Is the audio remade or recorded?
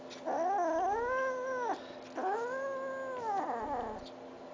recorded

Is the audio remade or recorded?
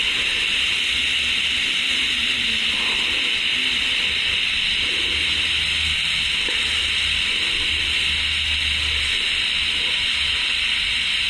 recorded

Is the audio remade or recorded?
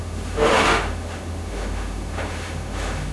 remade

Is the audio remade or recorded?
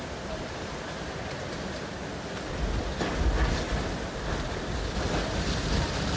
recorded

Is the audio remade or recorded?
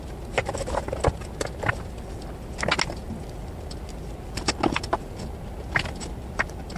recorded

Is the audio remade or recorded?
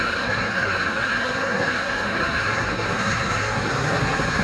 remade